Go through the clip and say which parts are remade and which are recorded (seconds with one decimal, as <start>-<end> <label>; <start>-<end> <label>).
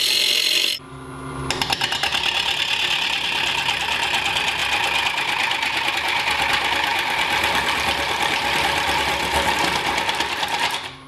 0.0-11.1 recorded